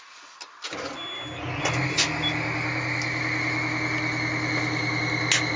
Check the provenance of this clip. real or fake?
real